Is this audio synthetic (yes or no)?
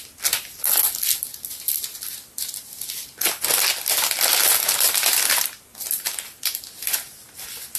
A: no